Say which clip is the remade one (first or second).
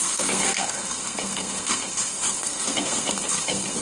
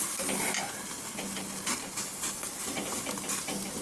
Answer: first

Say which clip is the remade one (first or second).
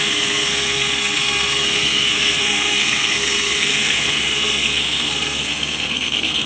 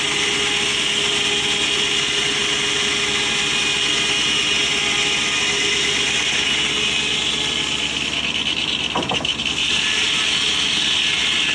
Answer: first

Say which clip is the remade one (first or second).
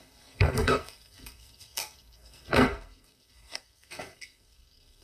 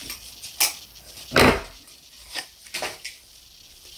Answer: first